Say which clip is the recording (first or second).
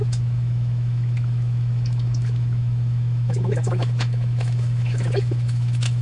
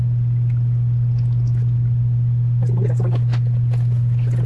second